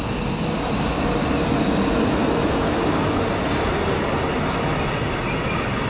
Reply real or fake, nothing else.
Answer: real